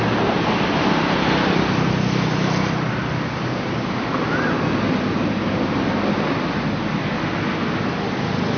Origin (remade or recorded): recorded